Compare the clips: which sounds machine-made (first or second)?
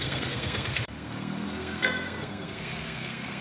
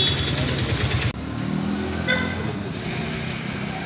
first